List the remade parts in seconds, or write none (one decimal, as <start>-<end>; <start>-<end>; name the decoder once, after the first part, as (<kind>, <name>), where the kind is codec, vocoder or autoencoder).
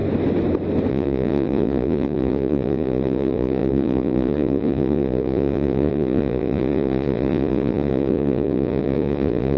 0.9-9.6 (vocoder, Vocos)